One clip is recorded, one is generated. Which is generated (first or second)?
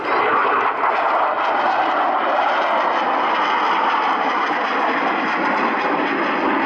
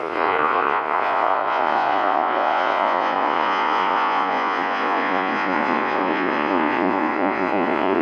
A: second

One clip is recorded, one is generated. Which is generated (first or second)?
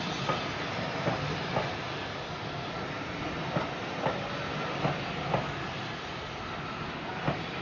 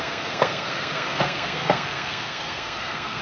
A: second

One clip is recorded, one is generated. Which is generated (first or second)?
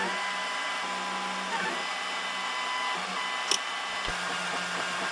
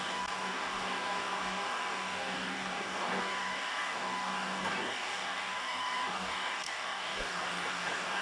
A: second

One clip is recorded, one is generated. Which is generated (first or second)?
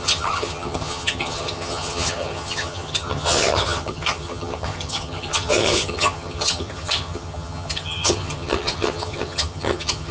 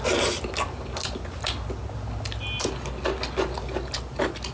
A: first